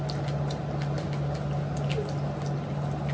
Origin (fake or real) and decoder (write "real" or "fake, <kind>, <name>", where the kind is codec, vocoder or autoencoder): real